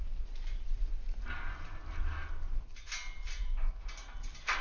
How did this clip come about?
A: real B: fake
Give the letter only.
A